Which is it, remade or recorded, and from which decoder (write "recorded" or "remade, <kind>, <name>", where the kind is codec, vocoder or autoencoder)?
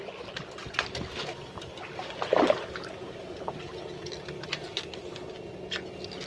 recorded